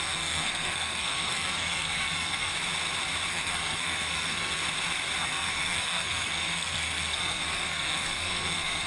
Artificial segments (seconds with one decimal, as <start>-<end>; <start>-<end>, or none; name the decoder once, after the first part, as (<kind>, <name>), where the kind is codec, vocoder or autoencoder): 0.0-2.5 (codec, SNAC); 3.3-4.6; 5.2-8.9